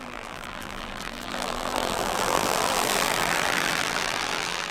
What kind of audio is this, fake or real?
fake